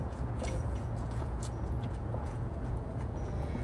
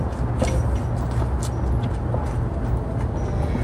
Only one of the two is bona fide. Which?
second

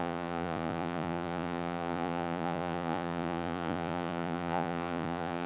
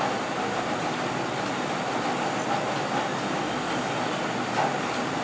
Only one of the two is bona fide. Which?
second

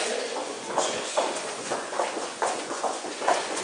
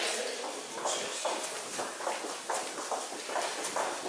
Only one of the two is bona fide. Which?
second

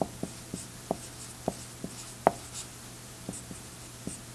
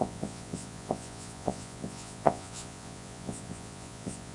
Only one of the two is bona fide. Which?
first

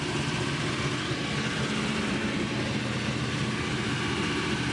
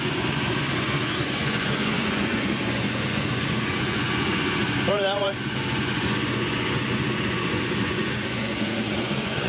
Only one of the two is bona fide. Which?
first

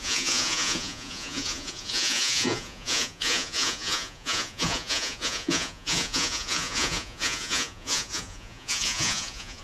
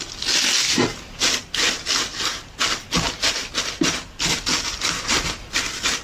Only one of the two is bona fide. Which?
second